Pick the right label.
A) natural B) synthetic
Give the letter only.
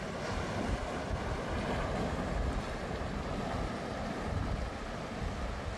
A